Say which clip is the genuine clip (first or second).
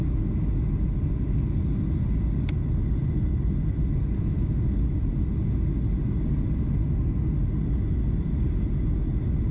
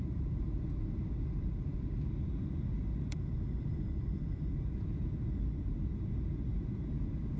first